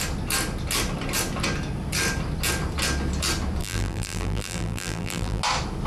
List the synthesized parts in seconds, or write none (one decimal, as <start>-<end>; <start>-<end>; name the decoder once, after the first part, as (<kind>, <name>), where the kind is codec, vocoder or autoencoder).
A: 3.6-5.4 (vocoder, BigVGAN v2)